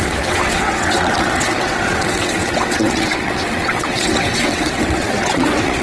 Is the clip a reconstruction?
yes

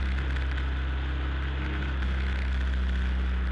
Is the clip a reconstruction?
no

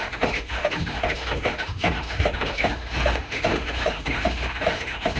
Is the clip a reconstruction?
yes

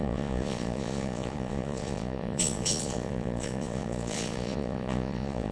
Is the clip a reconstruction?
yes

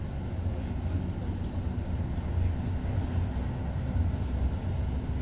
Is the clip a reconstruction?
no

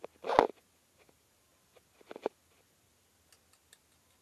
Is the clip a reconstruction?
no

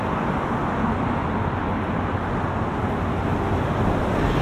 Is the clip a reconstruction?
no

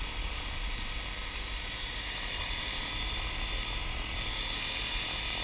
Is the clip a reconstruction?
no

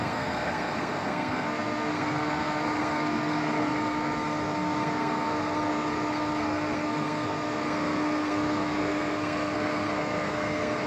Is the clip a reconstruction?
yes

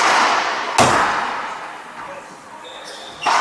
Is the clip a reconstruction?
no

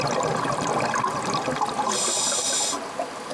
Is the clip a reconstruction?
no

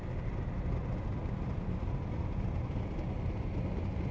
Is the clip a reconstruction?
no